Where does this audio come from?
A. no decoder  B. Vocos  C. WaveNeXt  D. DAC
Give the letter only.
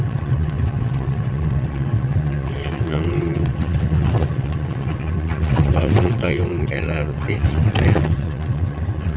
C